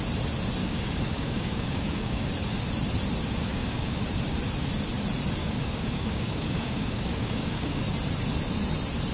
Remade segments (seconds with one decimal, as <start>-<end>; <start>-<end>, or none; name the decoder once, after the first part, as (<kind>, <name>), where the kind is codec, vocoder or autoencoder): 0.6-2.3 (codec, DAC); 3.5-4.0; 5.4-7.8